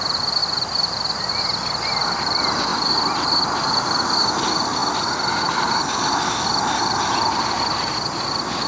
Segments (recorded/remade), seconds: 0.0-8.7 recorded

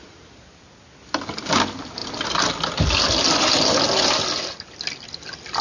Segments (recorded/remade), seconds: 0.0-5.6 recorded

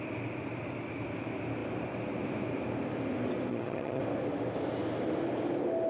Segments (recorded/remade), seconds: 0.0-3.5 recorded; 3.5-4.0 remade; 4.0-5.9 recorded

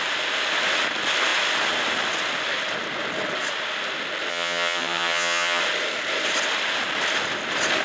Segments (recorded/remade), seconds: 0.0-4.3 recorded; 4.3-5.6 remade; 5.6-7.8 recorded

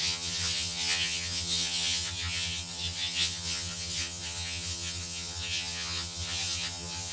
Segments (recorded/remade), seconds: 0.0-7.1 remade

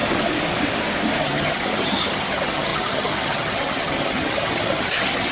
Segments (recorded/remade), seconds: 0.0-1.2 recorded; 1.2-5.3 remade